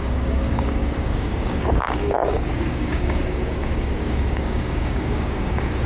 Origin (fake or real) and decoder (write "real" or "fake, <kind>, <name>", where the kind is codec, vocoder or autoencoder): fake, codec, DAC